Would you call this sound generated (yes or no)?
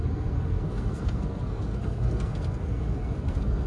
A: yes